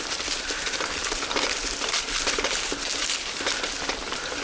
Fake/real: real